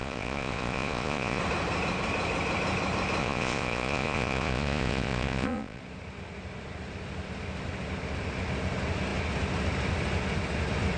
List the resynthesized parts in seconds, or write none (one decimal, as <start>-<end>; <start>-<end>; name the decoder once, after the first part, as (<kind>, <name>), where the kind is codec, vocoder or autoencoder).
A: 0.0-1.4 (vocoder, Vocos); 3.2-5.8